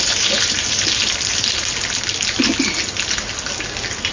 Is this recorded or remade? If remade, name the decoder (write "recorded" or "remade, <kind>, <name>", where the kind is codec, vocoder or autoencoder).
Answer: recorded